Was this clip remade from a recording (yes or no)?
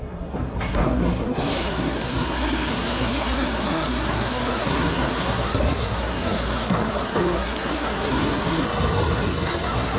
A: yes